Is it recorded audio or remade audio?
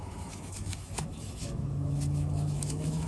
remade